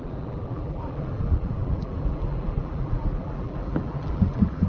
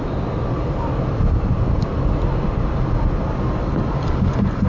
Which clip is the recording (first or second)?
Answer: second